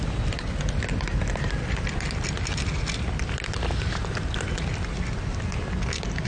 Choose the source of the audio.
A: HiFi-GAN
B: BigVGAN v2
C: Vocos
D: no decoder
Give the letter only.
B